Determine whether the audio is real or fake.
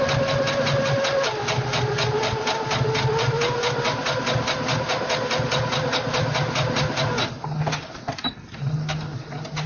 real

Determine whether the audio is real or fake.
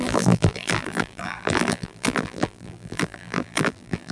fake